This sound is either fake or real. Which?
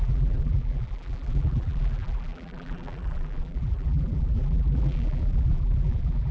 fake